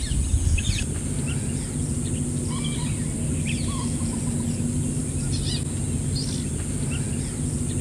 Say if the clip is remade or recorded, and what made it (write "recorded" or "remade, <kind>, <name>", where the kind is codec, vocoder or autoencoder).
recorded